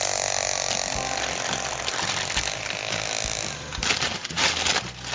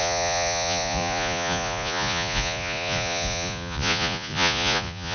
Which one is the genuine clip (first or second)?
first